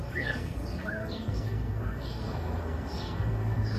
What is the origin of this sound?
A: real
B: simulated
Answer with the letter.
B